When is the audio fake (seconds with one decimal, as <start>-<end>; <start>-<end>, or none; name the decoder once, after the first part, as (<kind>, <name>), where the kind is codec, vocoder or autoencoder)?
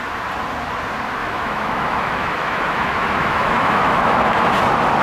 1.2-4.2 (autoencoder, DAC-VAE)